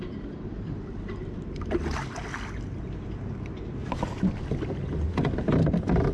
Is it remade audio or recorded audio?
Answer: recorded